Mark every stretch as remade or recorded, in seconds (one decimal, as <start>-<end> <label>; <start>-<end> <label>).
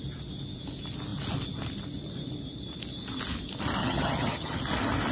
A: 0.0-3.8 recorded; 3.8-4.6 remade; 4.6-5.1 recorded